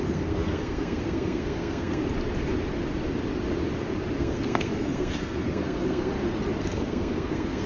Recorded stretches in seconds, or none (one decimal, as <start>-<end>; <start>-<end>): 2.0-4.2; 6.1-6.6